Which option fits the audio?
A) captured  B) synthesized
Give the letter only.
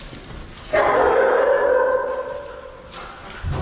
A